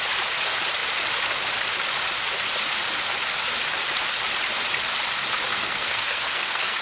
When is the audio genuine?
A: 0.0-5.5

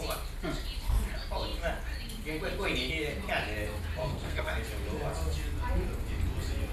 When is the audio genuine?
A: 0.0-4.0; 4.5-6.7

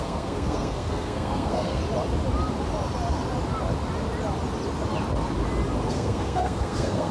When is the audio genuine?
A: 1.8-5.9

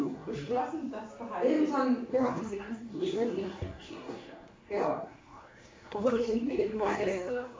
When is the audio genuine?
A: 0.6-2.1